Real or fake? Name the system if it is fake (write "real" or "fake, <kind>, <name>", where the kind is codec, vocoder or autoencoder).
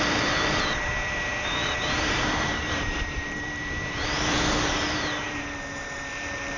fake, vocoder, BigVGAN v2